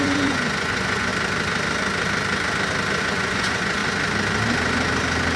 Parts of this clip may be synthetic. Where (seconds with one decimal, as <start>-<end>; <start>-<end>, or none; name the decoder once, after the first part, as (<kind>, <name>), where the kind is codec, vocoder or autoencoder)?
0.0-1.1 (vocoder, Vocos); 3.0-3.8